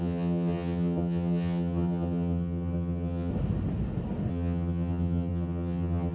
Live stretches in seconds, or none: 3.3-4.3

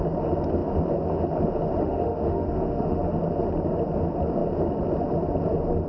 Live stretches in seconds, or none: 0.0-1.8; 3.0-5.9

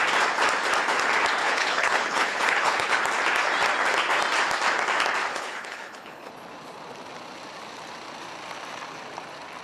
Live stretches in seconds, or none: 0.0-1.4; 3.0-5.3; 6.3-9.6

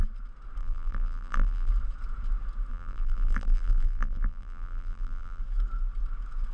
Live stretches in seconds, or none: 0.0-0.6; 1.7-2.7; 5.4-6.5